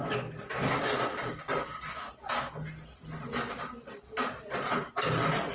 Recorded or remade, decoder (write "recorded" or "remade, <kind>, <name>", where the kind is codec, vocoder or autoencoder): recorded